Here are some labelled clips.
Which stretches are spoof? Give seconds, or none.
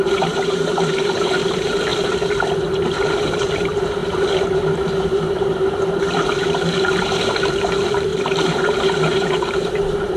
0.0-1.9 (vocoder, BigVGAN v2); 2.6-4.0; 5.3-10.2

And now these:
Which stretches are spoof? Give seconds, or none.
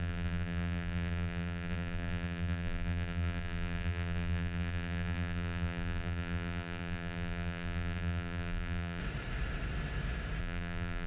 0.0-9.0 (vocoder, BigVGAN v2); 10.4-11.1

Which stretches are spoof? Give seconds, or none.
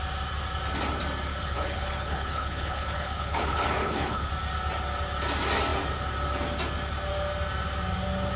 1.3-4.3 (codec, HILCodec)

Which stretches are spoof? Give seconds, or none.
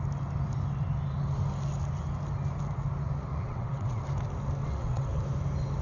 3.3-4.0 (vocoder, WaveNeXt); 4.6-5.2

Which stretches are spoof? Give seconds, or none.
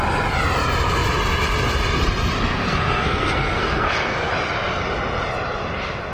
2.5-4.3 (codec, SNAC)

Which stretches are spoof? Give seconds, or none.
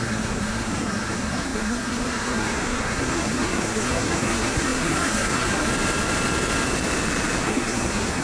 0.0-5.7 (codec, SNAC); 7.4-8.2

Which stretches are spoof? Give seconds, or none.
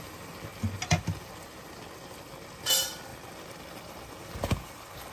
none